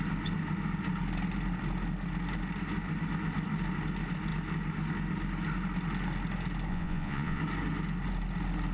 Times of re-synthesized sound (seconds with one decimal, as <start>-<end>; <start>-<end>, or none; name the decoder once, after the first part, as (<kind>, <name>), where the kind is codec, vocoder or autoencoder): 6.7-7.4 (vocoder, Vocos)